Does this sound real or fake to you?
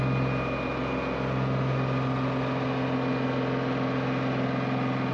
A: real